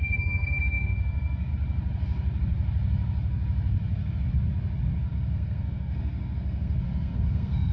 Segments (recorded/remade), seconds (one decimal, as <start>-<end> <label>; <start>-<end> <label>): 0.0-1.5 remade; 1.5-5.1 recorded; 5.1-7.7 remade